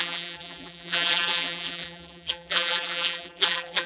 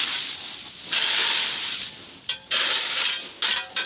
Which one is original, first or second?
second